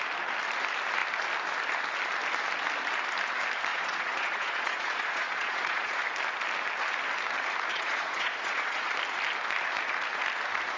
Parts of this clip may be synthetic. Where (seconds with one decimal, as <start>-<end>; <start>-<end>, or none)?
3.7-6.0; 7.7-8.9